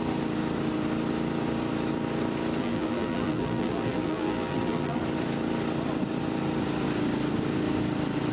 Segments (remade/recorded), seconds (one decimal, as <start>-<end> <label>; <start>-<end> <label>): 0.0-2.6 recorded; 2.6-5.0 remade; 5.0-8.3 recorded